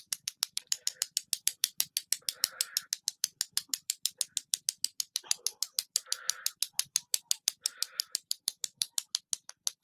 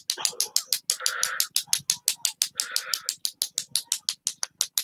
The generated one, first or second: first